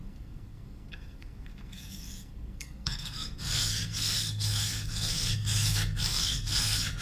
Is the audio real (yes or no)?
no